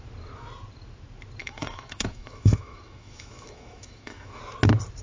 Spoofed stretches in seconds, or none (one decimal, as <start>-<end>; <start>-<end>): 1.4-4.4